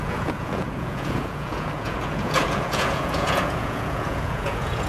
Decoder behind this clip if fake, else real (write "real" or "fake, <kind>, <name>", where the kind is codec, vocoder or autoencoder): fake, vocoder, Vocos